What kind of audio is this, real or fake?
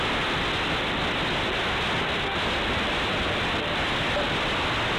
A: real